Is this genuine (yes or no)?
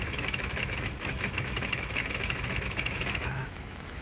no